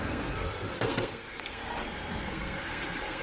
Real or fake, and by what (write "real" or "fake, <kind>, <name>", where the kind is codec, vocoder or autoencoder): fake, codec, SNAC